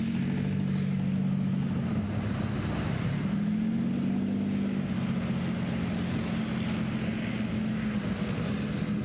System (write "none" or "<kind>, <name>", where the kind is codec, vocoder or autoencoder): none